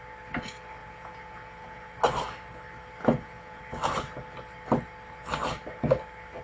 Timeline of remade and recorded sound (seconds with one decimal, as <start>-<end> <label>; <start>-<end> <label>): 0.0-0.8 recorded; 0.8-2.0 remade; 2.0-3.0 recorded; 3.0-3.6 remade; 3.6-6.4 recorded